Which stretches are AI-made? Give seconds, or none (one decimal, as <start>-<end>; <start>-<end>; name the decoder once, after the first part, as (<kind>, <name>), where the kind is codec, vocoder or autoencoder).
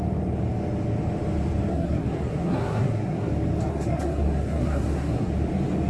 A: 1.7-3.3 (codec, SNAC); 3.7-5.3